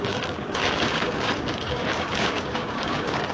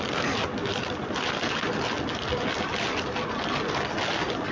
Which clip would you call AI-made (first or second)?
first